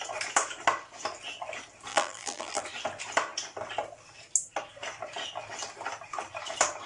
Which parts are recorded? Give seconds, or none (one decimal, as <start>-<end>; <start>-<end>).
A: 0.0-1.9; 2.6-6.9